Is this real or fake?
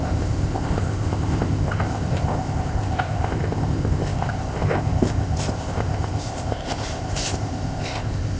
fake